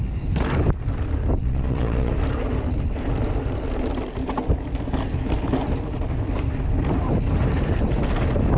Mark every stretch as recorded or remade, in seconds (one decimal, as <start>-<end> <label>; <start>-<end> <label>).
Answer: 0.0-1.4 recorded; 1.4-2.1 remade; 2.1-8.6 recorded